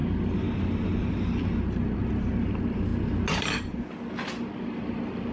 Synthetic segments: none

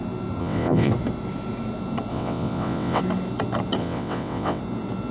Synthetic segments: 0.4-0.9 (vocoder, WaveNeXt); 2.1-3.0; 3.8-4.6

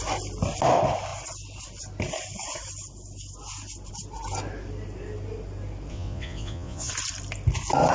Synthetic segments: 5.9-6.9 (vocoder, Vocos)